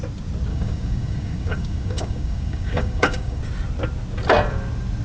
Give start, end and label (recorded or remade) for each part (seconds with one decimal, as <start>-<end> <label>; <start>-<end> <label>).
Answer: 0.0-0.5 recorded; 0.5-3.4 remade; 3.4-5.0 recorded